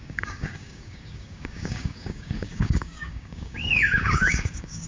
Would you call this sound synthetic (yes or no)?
yes